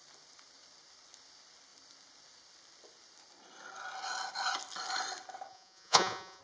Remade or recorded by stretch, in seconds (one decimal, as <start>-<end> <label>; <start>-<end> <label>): 0.0-5.5 recorded; 5.5-6.4 remade